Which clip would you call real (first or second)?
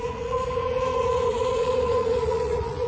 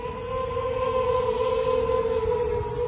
second